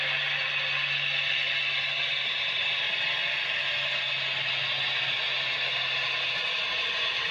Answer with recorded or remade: recorded